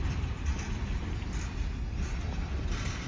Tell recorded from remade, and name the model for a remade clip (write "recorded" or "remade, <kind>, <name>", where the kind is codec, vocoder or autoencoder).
recorded